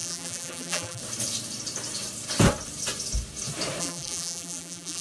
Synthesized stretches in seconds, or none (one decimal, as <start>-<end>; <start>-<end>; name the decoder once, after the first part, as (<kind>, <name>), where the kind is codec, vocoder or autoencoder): 0.0-1.0 (vocoder, BigVGAN v2); 3.8-5.0